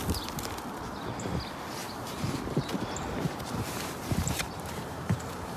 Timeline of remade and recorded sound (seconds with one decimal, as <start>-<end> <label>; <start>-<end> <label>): 0.0-1.8 recorded; 1.8-5.6 remade